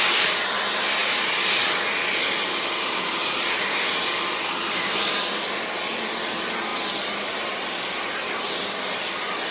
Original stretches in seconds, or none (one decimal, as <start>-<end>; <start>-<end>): 0.0-9.5